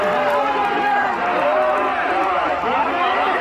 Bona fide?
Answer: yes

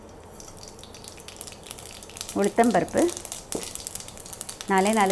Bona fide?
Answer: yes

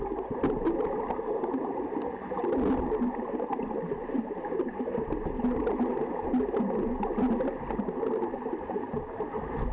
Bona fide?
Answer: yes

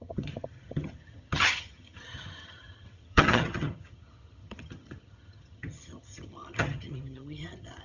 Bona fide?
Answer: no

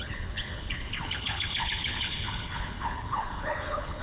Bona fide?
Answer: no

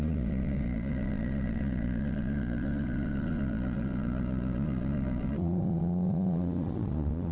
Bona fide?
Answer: no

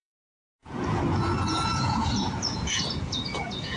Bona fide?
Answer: no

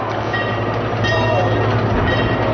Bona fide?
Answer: yes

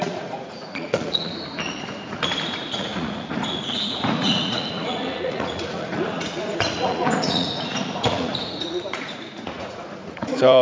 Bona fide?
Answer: no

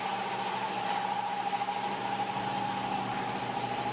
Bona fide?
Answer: yes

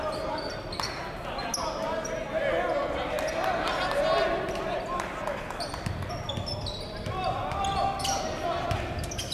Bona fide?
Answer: yes